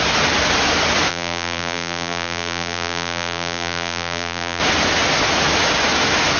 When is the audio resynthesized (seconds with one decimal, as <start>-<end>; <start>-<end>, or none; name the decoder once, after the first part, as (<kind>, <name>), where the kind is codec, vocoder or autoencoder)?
1.1-4.6 (vocoder, BigVGAN v2)